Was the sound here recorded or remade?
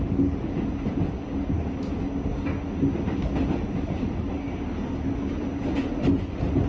recorded